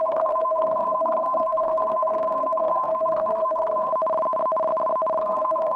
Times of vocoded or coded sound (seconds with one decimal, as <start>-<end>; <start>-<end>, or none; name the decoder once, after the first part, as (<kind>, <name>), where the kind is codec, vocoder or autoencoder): 0.0-3.9 (codec, SNAC); 5.2-5.8